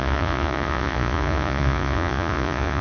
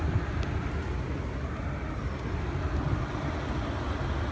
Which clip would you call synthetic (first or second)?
first